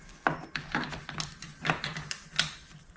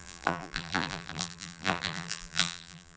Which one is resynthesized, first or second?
second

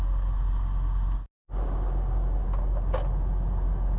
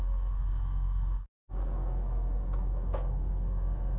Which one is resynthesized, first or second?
second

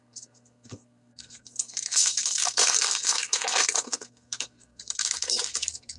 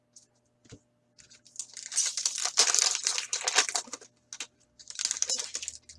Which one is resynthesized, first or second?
first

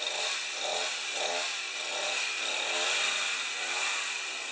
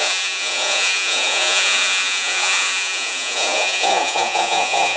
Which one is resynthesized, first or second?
second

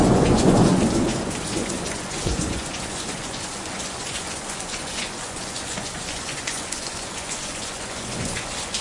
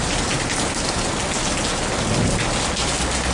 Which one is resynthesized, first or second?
first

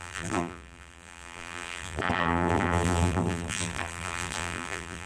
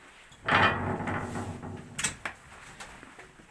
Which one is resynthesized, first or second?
first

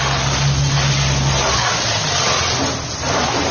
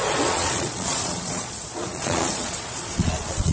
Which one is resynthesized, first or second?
second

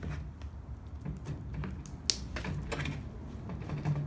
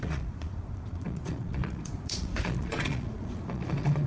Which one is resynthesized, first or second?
second